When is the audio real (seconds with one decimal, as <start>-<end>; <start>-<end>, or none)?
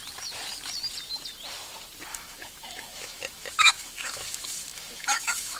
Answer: 0.0-2.1